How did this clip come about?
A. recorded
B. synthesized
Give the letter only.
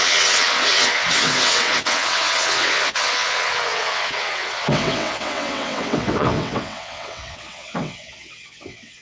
B